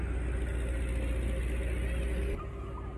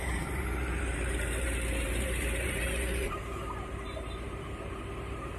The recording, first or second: first